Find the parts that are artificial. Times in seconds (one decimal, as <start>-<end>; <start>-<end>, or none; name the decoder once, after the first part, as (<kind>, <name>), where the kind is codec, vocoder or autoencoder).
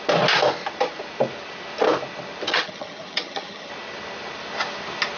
2.5-3.7 (vocoder, HiFi-GAN)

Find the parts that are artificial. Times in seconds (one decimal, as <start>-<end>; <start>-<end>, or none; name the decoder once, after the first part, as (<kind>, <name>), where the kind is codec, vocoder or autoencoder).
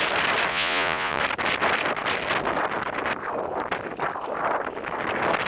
0.5-1.2 (vocoder, Vocos)